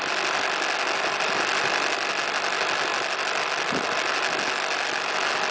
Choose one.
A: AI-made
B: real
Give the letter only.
B